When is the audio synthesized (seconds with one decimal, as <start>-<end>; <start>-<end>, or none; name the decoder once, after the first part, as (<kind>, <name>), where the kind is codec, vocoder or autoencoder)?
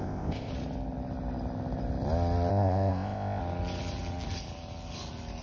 0.0-0.5 (codec, ZipCodec); 2.5-3.4